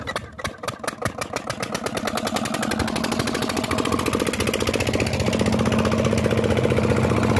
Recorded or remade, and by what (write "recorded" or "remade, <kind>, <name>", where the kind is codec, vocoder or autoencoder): recorded